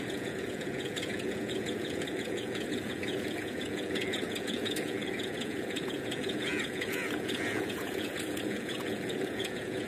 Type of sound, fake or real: fake